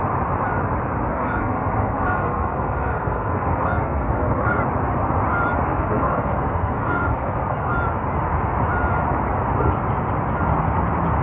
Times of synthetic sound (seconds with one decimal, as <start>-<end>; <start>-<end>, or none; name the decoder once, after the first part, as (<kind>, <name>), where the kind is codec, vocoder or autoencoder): 1.1-4.6 (codec, SNAC); 5.7-7.7